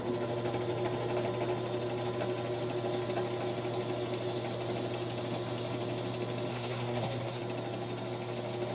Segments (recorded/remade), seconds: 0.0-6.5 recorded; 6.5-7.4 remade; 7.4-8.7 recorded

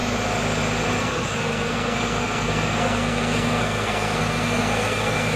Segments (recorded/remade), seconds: 0.0-1.0 recorded; 1.0-5.4 remade

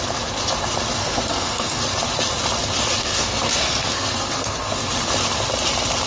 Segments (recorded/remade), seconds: 0.0-1.0 recorded; 1.0-1.8 remade; 1.8-3.0 recorded; 3.0-4.9 remade; 4.9-6.1 recorded